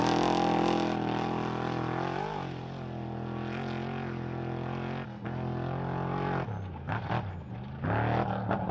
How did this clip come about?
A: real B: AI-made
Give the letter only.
A